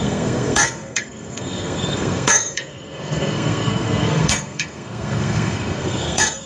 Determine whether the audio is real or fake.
fake